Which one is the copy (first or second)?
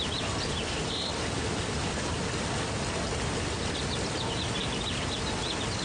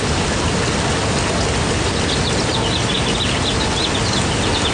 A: first